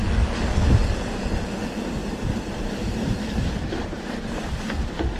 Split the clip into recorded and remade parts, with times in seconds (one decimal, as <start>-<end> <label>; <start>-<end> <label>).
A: 0.0-2.0 recorded; 2.0-5.2 remade

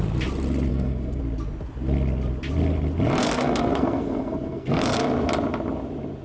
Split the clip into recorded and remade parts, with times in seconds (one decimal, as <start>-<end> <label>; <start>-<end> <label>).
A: 0.0-0.7 recorded; 0.7-1.2 remade; 1.2-3.2 recorded; 3.2-5.0 remade; 5.0-6.2 recorded

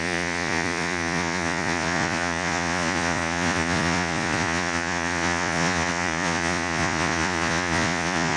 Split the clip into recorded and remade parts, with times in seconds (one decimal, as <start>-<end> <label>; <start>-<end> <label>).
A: 0.0-8.4 remade

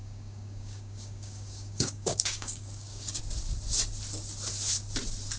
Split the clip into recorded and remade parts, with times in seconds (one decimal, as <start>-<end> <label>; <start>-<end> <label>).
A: 0.0-3.2 remade; 3.2-5.4 recorded

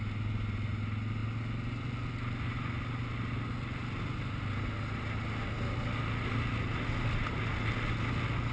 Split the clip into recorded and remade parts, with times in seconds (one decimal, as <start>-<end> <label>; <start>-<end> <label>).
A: 0.0-8.5 recorded